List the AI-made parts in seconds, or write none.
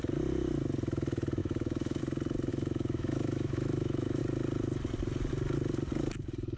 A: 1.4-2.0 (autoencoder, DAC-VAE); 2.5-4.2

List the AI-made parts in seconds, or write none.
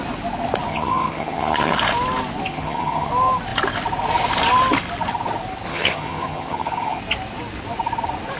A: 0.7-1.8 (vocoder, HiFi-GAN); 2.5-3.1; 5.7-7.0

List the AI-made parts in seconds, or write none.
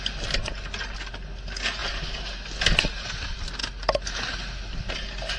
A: none